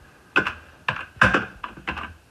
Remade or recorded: recorded